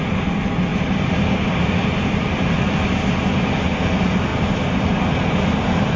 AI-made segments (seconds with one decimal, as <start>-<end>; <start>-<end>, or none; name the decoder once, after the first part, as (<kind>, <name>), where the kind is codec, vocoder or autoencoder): none